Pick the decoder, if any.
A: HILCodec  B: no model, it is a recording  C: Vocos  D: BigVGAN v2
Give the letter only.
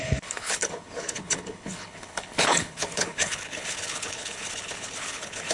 A